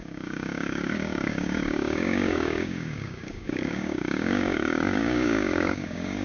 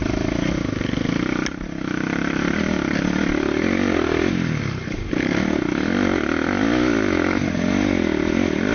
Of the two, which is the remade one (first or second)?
first